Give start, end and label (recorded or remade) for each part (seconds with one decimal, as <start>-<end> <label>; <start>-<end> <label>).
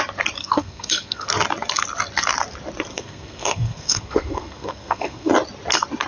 0.0-0.4 recorded; 0.4-1.3 remade; 1.3-2.9 recorded; 2.9-5.3 remade; 5.3-6.1 recorded